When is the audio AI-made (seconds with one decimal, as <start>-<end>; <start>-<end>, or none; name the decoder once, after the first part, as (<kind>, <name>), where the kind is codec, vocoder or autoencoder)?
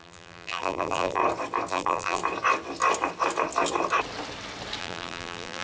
0.0-1.2 (vocoder, BigVGAN v2); 1.7-2.2; 4.8-5.6